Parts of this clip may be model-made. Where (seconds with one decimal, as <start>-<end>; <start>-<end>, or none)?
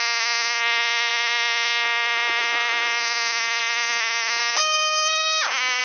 4.4-5.8